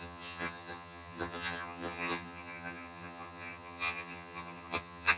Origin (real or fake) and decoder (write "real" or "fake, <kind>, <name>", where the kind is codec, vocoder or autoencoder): fake, vocoder, HiFi-GAN